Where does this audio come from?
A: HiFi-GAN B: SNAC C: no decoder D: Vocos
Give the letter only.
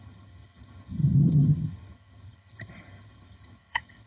A